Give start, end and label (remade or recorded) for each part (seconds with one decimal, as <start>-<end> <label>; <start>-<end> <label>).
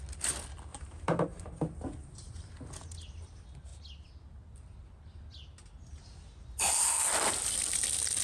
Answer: 0.0-0.7 recorded; 0.7-2.4 remade; 2.4-8.2 recorded